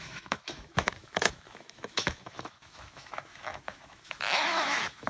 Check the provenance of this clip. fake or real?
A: fake